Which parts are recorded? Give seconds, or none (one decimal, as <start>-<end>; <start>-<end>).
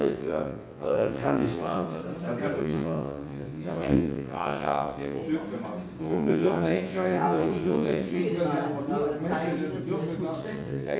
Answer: 2.0-2.6; 5.2-6.0; 8.2-10.4